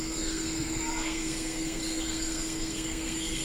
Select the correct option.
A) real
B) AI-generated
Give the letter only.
B